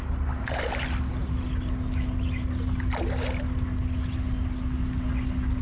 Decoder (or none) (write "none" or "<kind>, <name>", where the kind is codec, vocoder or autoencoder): none